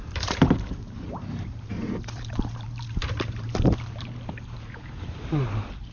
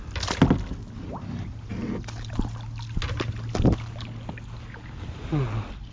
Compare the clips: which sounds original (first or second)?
second